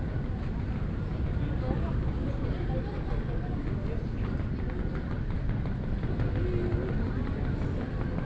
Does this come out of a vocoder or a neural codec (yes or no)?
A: no